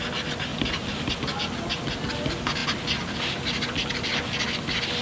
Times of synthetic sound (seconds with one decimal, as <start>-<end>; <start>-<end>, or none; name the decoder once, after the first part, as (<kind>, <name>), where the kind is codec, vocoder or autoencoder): none